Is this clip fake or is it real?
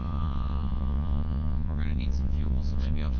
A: fake